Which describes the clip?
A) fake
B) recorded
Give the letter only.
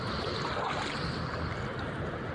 B